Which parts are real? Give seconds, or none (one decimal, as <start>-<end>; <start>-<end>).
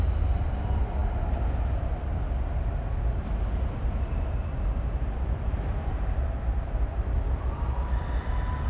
0.0-8.7